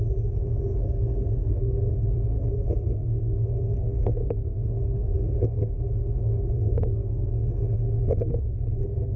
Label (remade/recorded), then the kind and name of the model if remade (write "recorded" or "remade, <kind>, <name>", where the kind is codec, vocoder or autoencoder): remade, codec, SNAC